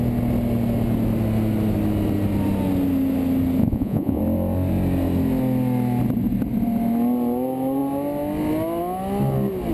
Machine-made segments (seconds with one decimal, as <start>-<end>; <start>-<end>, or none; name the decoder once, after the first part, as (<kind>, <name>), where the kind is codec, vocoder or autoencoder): 3.6-4.2 (vocoder, Vocos)